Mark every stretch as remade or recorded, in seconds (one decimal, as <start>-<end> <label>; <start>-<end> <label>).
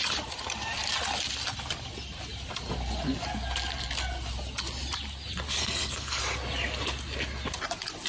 0.0-5.6 recorded; 5.6-6.2 remade; 6.2-8.1 recorded